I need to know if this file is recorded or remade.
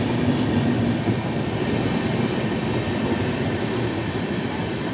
recorded